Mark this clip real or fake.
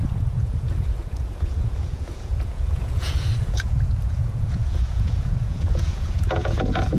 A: fake